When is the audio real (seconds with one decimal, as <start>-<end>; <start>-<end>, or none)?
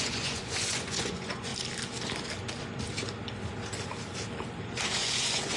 1.5-4.9